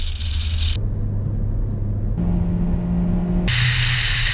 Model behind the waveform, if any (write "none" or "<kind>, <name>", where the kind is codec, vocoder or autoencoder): none